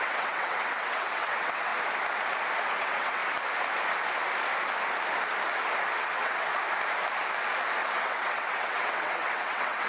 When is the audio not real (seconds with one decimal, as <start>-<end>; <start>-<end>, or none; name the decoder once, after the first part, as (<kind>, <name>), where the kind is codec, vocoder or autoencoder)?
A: 0.0-1.7 (vocoder, WaveNeXt); 2.8-3.2; 6.0-6.5; 7.8-9.9